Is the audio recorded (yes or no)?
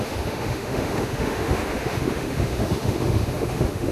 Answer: no